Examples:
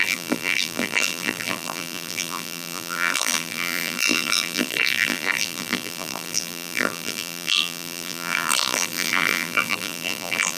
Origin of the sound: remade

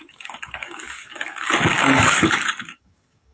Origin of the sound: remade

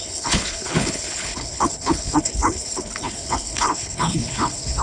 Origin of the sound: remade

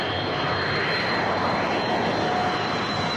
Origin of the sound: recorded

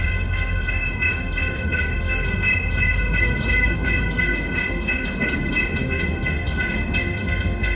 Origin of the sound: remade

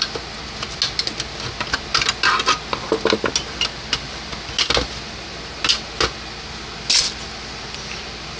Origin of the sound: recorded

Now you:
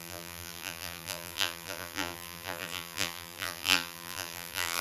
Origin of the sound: remade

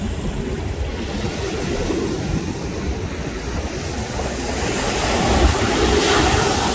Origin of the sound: recorded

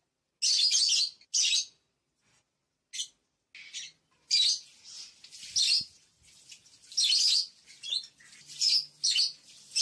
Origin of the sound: recorded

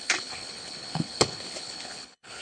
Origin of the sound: remade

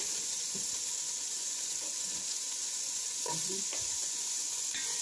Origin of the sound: remade